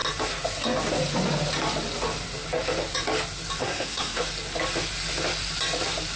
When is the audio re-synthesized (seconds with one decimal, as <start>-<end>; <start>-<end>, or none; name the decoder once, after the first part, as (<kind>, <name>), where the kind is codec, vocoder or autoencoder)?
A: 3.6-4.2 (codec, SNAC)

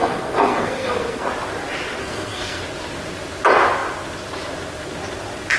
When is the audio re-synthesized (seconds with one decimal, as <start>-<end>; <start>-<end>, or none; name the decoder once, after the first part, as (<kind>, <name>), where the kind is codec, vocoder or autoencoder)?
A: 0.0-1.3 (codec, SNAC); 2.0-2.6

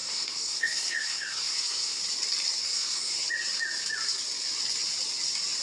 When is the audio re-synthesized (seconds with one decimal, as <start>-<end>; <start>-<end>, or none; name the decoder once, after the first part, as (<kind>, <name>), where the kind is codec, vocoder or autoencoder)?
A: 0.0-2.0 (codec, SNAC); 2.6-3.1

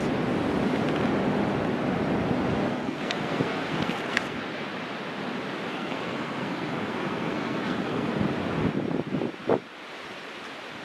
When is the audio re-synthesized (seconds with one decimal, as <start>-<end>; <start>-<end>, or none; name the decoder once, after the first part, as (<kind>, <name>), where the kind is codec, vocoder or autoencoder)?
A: 2.7-4.4 (codec, SNAC); 5.7-8.1